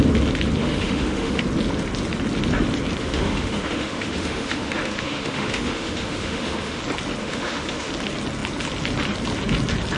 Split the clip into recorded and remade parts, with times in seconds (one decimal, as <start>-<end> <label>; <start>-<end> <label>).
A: 0.0-0.6 recorded; 0.6-1.4 remade; 1.4-3.0 recorded; 3.0-6.8 remade; 6.8-7.2 recorded; 7.2-7.9 remade; 7.9-10.0 recorded